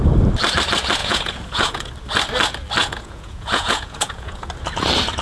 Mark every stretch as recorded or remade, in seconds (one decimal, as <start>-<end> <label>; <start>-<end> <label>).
0.0-1.0 recorded; 1.0-1.9 remade; 1.9-2.8 recorded; 2.8-4.5 remade; 4.5-5.2 recorded